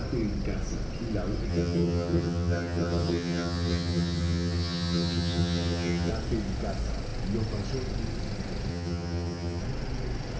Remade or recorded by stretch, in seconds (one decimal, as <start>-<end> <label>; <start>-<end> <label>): 0.0-1.5 recorded; 1.5-6.1 remade; 6.1-8.7 recorded; 8.7-9.6 remade; 9.6-10.4 recorded